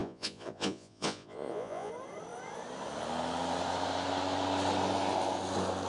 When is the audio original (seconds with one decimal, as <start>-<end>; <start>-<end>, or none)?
1.9-5.9